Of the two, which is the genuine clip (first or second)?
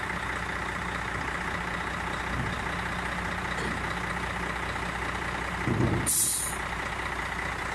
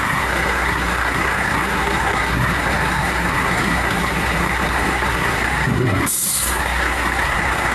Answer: first